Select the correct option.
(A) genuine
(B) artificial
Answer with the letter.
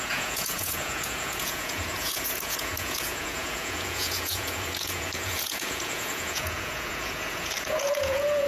B